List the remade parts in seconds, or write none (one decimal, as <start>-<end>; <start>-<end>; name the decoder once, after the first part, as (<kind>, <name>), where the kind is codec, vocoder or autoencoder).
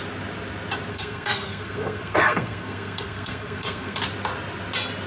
0.9-4.0 (codec, SNAC)